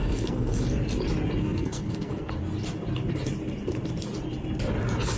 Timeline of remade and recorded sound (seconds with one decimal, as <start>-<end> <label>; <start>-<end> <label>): 0.0-0.6 remade; 0.6-1.4 recorded; 1.4-2.3 remade; 2.3-5.2 recorded